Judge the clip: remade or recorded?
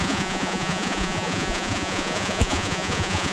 remade